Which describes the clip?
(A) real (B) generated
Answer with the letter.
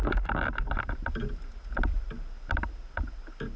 A